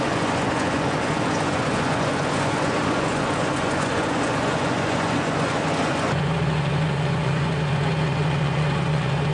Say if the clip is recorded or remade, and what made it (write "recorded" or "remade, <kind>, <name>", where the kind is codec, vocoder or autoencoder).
remade, vocoder, Vocos